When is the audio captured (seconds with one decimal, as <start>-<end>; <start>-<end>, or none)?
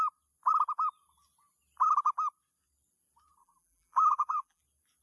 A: 0.0-3.4; 4.6-5.0